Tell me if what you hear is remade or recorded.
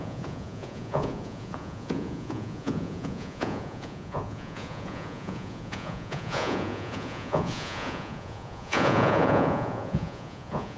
remade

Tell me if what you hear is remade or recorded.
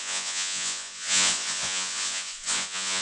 remade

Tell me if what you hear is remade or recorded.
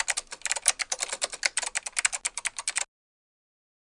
recorded